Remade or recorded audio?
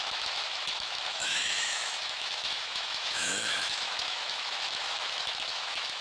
remade